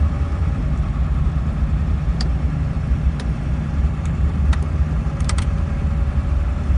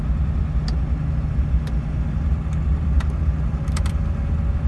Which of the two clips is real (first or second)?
second